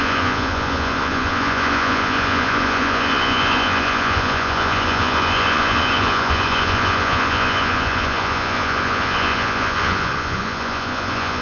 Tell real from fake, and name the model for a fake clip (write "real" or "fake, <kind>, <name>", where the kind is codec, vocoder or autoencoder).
fake, vocoder, Vocos